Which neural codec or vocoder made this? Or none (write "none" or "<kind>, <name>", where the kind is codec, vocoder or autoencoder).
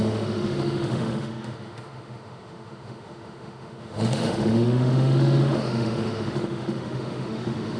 autoencoder, DAC-VAE